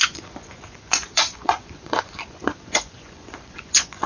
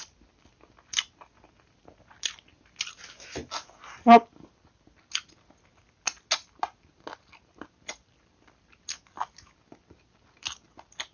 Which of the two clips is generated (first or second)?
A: first